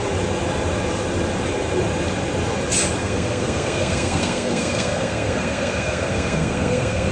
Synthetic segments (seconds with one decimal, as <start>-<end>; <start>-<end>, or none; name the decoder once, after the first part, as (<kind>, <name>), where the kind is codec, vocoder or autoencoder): 3.0-7.1 (codec, SNAC)